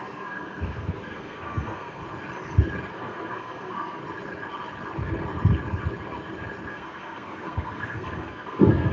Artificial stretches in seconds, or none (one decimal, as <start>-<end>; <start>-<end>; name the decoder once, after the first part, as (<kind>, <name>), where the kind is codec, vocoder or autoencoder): 0.0-2.0 (codec, SNAC); 2.9-4.0; 6.7-8.9